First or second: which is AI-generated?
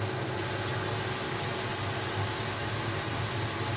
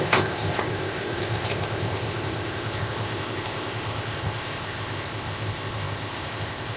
second